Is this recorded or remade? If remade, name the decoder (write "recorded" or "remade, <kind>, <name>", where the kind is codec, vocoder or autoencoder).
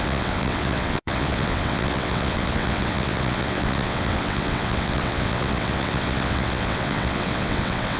remade, vocoder, WaveNeXt